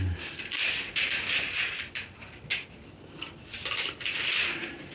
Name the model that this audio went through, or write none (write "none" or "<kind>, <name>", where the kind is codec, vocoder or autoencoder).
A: none